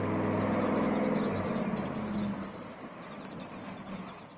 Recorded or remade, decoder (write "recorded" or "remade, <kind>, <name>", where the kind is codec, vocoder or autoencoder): recorded